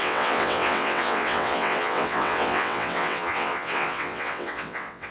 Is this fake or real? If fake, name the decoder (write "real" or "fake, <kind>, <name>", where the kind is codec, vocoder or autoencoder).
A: fake, vocoder, WaveNeXt